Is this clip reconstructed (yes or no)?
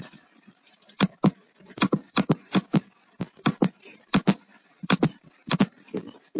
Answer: yes